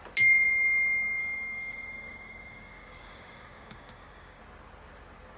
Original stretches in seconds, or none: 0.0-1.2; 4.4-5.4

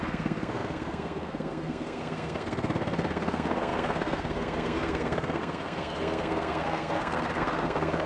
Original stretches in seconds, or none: none

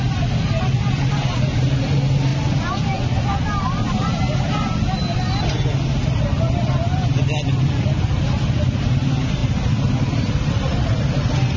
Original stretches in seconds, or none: 0.0-11.6

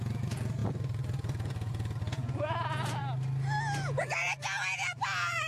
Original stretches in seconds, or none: 3.0-4.0

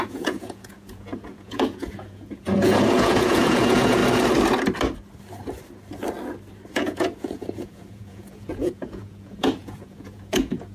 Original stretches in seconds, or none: 4.0-6.7

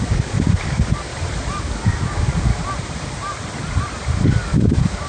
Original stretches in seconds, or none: 1.1-1.6; 2.5-4.2

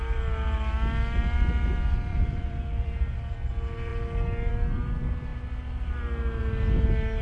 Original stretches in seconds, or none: 0.0-2.1; 3.5-5.3; 6.4-7.2

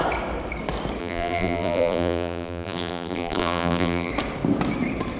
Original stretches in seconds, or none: 0.0-1.0; 4.1-5.2